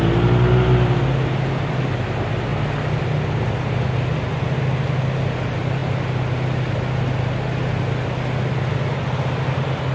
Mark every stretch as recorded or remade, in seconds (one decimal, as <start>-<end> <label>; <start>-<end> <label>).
0.0-9.9 recorded

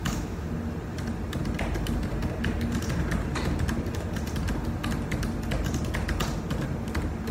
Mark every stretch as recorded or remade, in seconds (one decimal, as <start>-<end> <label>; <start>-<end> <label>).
0.0-0.5 remade; 0.5-7.3 recorded

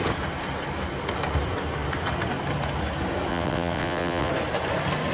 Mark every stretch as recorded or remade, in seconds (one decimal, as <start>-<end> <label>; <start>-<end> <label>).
0.0-3.3 recorded; 3.3-4.3 remade; 4.3-5.1 recorded

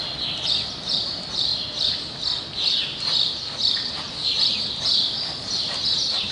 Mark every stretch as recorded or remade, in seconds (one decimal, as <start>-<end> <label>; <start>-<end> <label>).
0.0-6.3 recorded

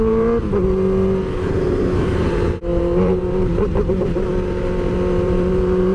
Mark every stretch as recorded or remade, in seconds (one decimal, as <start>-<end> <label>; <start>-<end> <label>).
0.0-0.6 remade; 0.6-1.5 recorded; 1.5-5.9 remade

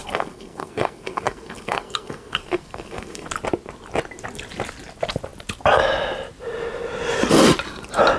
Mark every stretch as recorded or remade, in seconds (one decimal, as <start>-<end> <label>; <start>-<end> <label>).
0.0-3.3 remade; 3.3-8.2 recorded

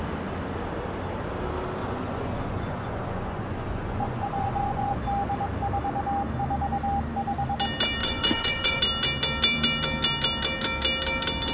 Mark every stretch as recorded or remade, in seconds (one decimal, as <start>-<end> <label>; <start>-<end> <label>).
0.0-1.8 recorded; 1.8-5.0 remade; 5.0-8.0 recorded; 8.0-8.8 remade; 8.8-11.5 recorded